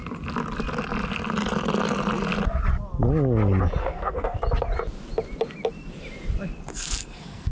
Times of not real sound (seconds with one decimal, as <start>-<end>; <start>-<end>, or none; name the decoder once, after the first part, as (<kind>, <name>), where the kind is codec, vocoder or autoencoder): 3.8-4.4 (codec, SNAC); 6.7-7.5